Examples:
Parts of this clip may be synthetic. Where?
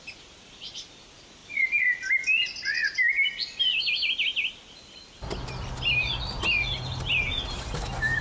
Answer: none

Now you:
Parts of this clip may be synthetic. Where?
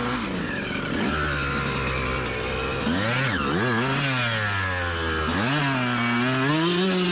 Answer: none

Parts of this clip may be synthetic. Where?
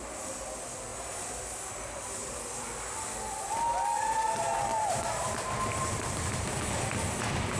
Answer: 0.9-2.4; 4.7-6.5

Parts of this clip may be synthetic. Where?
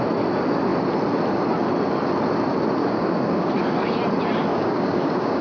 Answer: 2.8-3.5; 4.5-5.4